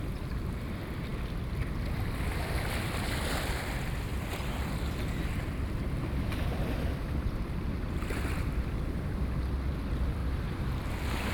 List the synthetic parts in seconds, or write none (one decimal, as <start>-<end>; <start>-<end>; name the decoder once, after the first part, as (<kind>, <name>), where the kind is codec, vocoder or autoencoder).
4.1-8.4 (vocoder, BigVGAN v2); 10.2-10.8